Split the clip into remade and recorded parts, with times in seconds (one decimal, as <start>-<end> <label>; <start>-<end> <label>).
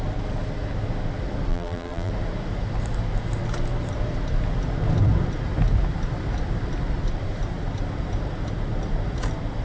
0.0-1.5 recorded; 1.5-2.1 remade; 2.1-9.6 recorded